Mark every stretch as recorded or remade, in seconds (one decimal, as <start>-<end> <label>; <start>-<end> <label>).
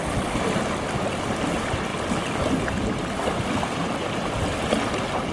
0.0-1.9 recorded; 1.9-4.5 remade; 4.5-5.3 recorded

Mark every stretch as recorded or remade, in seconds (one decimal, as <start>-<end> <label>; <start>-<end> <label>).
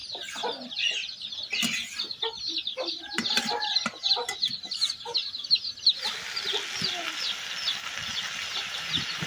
0.0-4.1 recorded; 4.1-6.1 remade; 6.1-8.5 recorded; 8.5-9.3 remade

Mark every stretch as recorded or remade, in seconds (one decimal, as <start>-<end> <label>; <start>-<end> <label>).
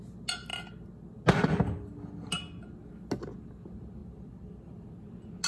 0.0-4.0 recorded; 4.0-4.9 remade; 4.9-5.5 recorded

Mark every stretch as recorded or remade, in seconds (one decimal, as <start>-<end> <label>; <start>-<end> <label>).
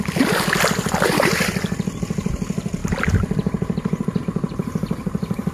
0.0-5.5 remade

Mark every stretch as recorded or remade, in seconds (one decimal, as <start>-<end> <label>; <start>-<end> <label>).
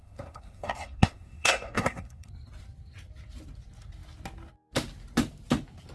0.0-2.3 remade; 2.3-5.9 recorded